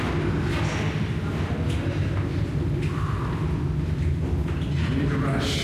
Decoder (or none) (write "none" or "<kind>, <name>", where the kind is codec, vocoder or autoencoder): none